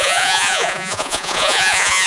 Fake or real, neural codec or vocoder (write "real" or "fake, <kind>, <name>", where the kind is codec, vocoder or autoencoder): fake, vocoder, Vocos